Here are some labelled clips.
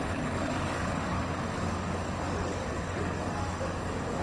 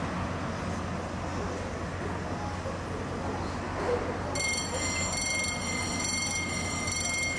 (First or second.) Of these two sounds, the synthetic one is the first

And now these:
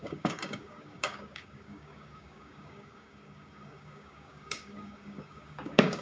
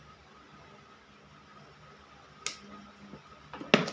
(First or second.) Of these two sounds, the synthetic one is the first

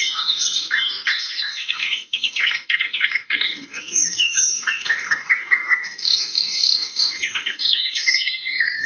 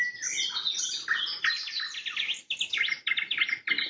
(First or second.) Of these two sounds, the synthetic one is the first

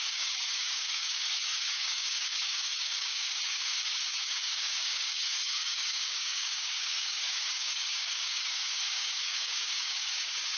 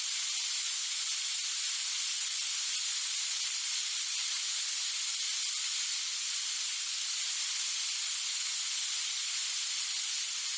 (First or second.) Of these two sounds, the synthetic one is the first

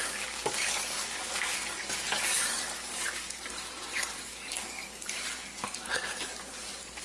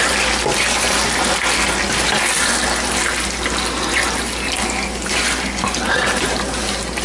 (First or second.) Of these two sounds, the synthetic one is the first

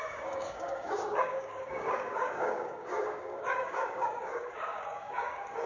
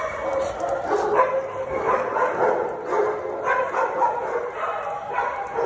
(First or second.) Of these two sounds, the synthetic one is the first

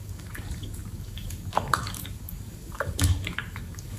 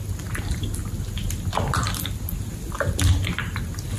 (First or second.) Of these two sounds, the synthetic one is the first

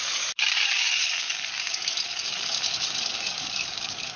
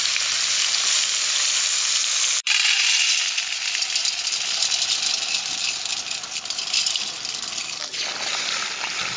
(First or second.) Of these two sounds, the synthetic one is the first